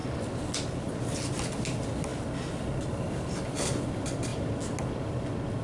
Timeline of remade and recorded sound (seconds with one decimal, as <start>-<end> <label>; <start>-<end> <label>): 0.0-5.6 recorded